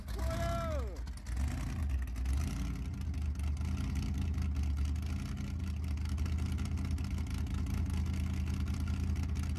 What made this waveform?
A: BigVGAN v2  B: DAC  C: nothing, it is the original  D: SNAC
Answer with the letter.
C